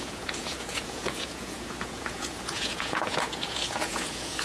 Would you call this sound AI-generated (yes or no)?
yes